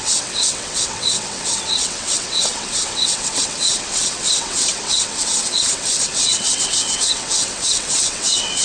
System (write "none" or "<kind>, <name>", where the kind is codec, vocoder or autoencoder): vocoder, WaveNeXt